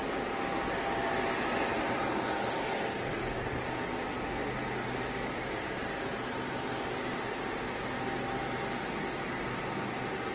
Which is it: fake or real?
real